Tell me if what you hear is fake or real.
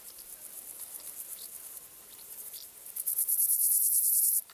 fake